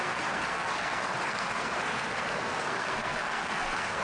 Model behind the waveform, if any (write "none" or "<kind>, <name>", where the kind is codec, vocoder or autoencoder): codec, SNAC